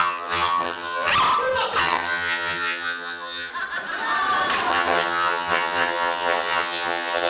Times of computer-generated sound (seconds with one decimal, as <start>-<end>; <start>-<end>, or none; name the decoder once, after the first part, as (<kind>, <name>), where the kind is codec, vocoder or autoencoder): 0.0-1.1 (vocoder, HiFi-GAN); 1.8-3.5; 4.7-7.3